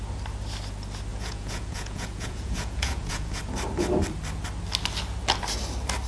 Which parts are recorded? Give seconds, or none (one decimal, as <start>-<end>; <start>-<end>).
0.0-1.1; 3.4-6.1